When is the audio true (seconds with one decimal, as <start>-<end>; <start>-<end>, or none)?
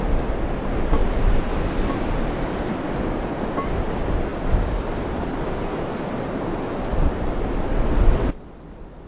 0.0-7.7; 8.3-9.1